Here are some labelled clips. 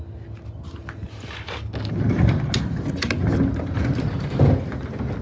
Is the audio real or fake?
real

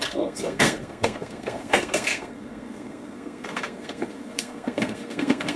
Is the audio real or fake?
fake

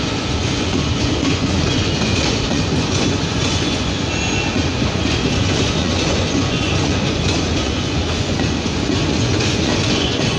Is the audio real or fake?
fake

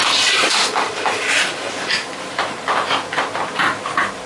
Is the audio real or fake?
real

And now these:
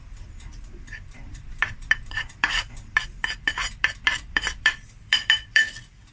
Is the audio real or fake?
fake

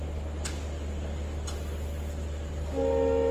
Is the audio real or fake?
real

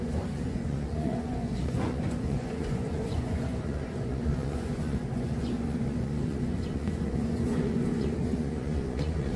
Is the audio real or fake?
fake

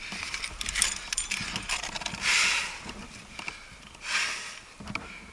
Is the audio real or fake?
real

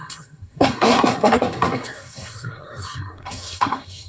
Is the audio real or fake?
fake